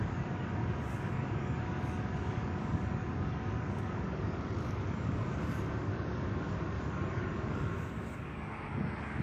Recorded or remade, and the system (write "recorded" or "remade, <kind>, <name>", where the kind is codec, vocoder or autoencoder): remade, codec, DAC